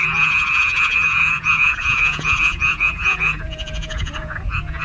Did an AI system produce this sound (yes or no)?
yes